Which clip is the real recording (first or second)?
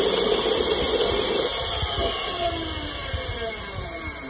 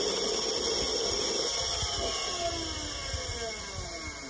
second